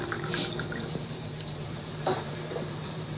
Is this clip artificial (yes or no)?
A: yes